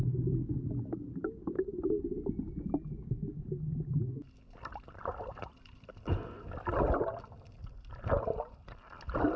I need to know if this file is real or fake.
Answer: real